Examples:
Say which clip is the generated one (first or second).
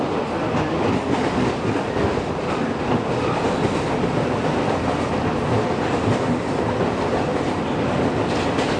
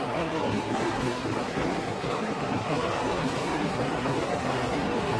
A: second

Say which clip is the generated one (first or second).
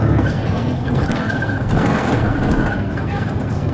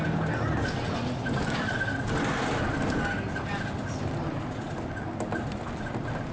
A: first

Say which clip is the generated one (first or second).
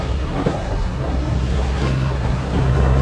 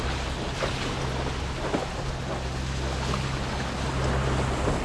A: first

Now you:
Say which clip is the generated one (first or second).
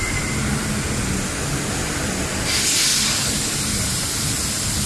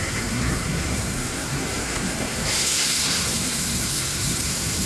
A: second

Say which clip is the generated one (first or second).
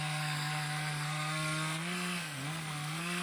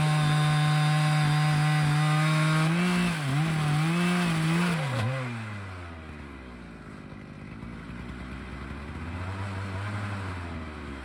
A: first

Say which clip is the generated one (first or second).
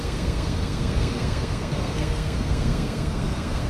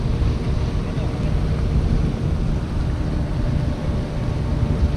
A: first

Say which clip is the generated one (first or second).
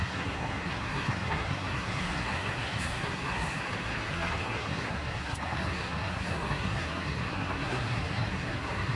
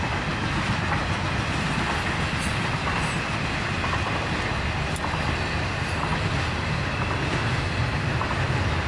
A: first